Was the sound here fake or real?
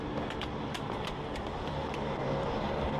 fake